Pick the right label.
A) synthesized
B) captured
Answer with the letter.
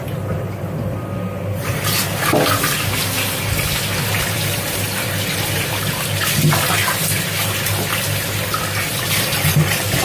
B